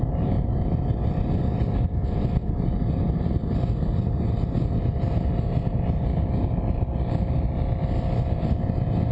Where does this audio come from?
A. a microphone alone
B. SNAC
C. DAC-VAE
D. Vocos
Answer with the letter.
A